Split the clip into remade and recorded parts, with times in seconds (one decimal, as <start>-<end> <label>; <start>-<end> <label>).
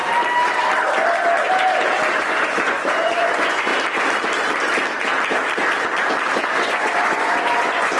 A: 0.0-2.2 recorded; 2.2-3.7 remade; 3.7-6.4 recorded; 6.4-8.0 remade